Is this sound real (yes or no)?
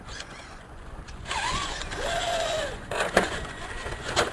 no